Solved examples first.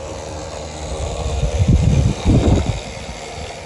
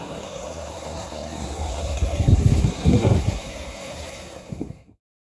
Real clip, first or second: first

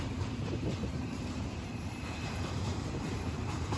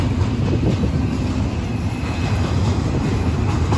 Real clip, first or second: second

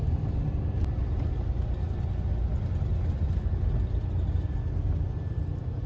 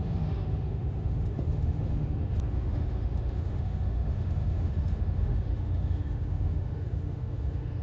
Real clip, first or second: first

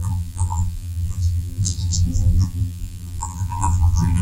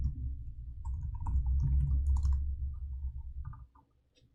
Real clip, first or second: second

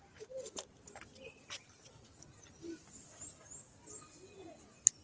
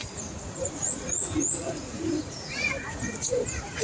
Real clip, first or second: first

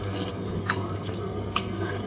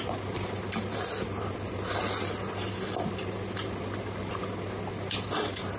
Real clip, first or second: second